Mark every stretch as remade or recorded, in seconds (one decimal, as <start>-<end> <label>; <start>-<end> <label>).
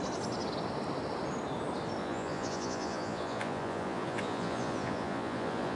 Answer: 0.0-2.0 recorded; 2.0-5.8 remade